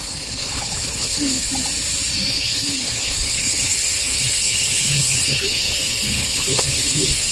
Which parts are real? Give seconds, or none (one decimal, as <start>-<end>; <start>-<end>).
1.5-2.3